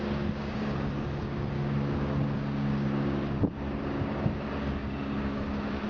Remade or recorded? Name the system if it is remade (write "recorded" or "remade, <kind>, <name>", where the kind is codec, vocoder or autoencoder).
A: remade, codec, DAC